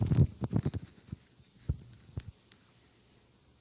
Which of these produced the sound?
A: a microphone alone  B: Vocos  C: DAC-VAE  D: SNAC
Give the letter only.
A